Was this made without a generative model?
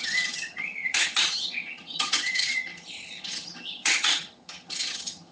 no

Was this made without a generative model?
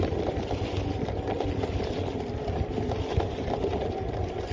yes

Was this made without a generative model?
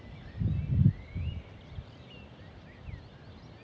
yes